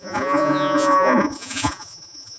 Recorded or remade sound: remade